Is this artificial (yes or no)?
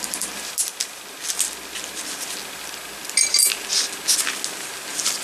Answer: no